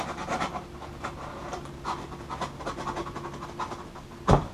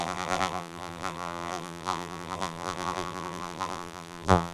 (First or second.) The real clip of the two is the first